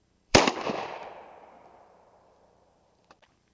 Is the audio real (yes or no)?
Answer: no